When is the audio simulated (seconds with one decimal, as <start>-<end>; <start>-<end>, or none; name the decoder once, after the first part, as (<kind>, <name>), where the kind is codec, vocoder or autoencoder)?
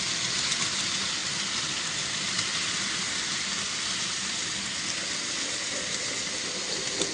none